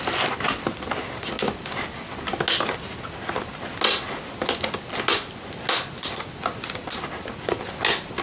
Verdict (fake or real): real